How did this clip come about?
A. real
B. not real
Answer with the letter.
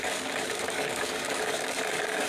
B